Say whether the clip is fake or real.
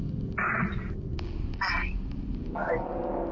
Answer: real